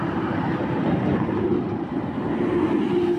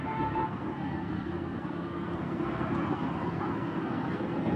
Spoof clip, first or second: second